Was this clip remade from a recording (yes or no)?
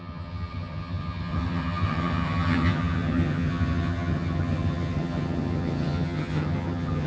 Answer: yes